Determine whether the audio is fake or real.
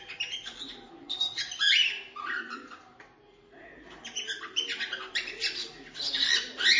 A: real